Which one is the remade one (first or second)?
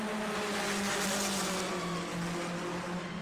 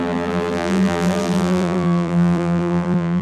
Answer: second